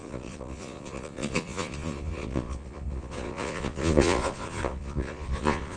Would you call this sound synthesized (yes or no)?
yes